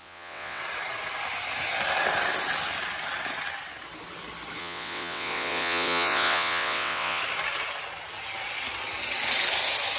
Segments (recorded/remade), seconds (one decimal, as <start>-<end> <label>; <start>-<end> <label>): 0.0-0.6 remade; 0.6-4.6 recorded; 4.6-7.2 remade; 7.2-10.0 recorded